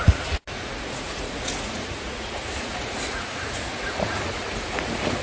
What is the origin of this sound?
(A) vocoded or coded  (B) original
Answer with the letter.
A